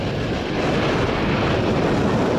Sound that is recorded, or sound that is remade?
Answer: recorded